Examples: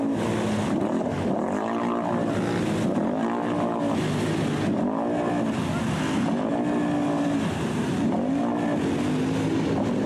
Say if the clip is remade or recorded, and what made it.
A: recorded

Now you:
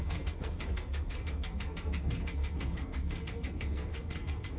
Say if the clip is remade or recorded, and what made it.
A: remade, codec, SNAC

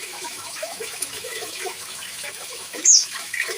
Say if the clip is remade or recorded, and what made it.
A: remade, autoencoder, DAC-VAE